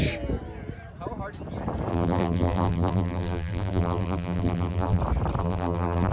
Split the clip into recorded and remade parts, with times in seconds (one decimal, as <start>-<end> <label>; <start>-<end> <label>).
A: 0.0-1.9 recorded; 1.9-5.0 remade; 5.0-5.4 recorded; 5.4-6.1 remade